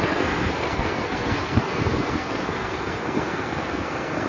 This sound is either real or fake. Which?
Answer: fake